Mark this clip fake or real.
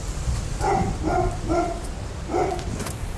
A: real